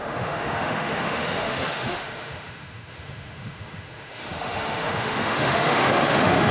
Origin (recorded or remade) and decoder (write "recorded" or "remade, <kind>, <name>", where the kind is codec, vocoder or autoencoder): remade, autoencoder, DAC-VAE